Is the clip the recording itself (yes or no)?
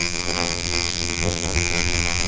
no